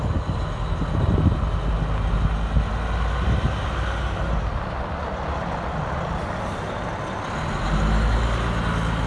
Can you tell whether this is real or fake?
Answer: real